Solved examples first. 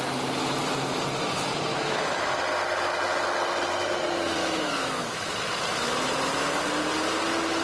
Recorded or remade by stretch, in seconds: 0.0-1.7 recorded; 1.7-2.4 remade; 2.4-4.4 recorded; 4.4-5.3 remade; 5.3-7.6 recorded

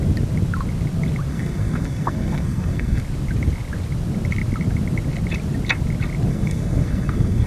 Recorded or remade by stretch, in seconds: 0.0-1.3 recorded; 1.3-3.0 remade; 3.0-6.3 recorded; 6.3-7.5 remade

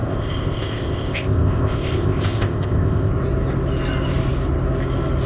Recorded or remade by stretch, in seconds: 0.0-3.1 remade; 3.1-5.3 recorded

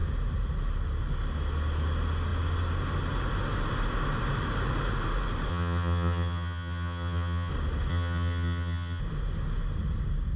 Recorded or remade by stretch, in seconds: 0.0-5.5 recorded; 5.5-7.5 remade; 7.5-7.9 recorded; 7.9-9.0 remade; 9.0-10.4 recorded

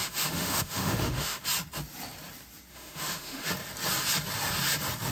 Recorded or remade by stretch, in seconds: 0.0-1.4 remade; 1.4-2.7 recorded; 2.7-3.5 remade; 3.5-5.1 recorded

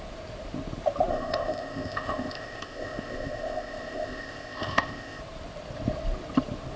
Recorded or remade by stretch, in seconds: 0.0-1.1 recorded; 1.1-5.2 remade; 5.2-6.8 recorded

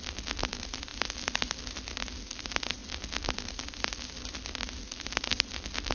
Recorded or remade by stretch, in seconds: 0.0-5.9 recorded

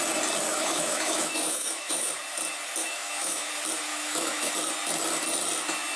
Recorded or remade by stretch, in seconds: 0.0-0.5 recorded; 0.5-2.1 remade; 2.1-2.8 recorded; 2.8-3.5 remade; 3.5-3.9 recorded; 3.9-4.5 remade; 4.5-6.0 recorded